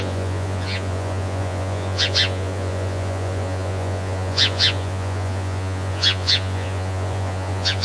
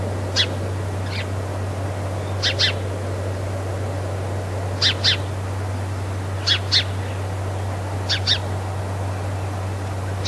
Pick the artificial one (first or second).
first